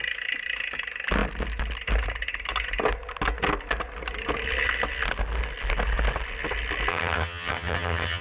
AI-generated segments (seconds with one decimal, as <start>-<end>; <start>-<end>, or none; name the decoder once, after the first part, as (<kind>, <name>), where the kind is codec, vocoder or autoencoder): 6.9-8.2 (vocoder, HiFi-GAN)